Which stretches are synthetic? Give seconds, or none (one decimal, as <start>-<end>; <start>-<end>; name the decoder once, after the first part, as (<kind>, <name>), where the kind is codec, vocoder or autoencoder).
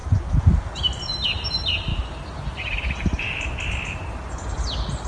0.0-0.7 (vocoder, BigVGAN v2); 1.9-3.4